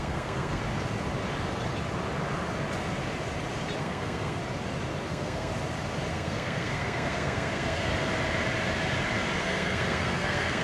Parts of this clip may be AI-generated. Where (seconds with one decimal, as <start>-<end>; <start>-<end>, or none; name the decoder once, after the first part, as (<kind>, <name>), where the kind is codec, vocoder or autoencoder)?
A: 0.0-0.6 (codec, SNAC); 3.8-4.4; 5.1-5.5; 6.1-7.9; 9.4-10.6